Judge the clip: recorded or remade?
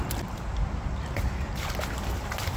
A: recorded